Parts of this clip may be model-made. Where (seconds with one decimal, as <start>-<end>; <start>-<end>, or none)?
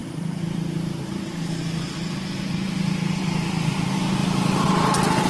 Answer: 0.0-1.6; 4.2-4.7